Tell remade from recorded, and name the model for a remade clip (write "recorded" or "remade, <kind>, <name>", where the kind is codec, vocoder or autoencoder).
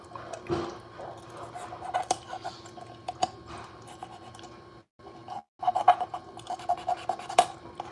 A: recorded